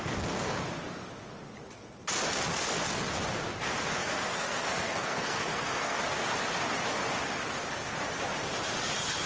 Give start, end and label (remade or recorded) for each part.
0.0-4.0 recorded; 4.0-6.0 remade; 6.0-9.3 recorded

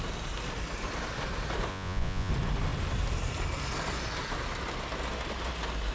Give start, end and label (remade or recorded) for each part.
0.0-1.7 recorded; 1.7-2.3 remade; 2.3-5.9 recorded

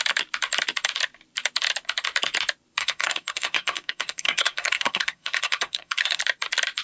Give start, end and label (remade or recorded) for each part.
0.0-2.8 recorded; 2.8-6.2 remade; 6.2-6.8 recorded

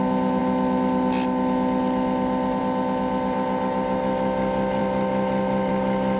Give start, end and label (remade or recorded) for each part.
0.0-6.2 recorded

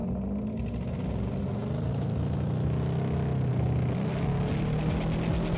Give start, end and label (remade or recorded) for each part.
0.0-5.6 recorded

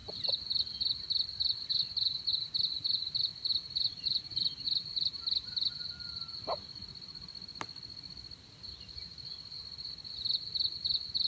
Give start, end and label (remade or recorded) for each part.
0.0-3.5 recorded; 3.5-5.7 remade; 5.7-11.3 recorded